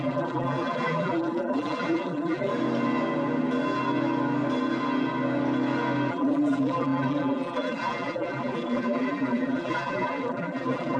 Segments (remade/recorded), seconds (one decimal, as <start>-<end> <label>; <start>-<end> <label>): 0.0-2.5 remade; 2.5-6.1 recorded; 6.1-11.0 remade